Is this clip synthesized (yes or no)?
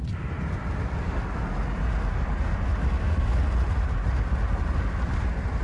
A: no